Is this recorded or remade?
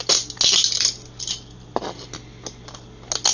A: recorded